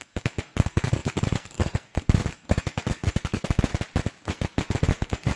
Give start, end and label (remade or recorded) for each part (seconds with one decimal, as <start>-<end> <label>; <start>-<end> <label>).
0.0-3.7 remade; 3.7-4.3 recorded; 4.3-5.4 remade